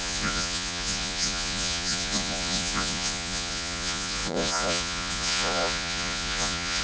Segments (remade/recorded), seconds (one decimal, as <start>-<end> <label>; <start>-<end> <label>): 0.0-6.8 remade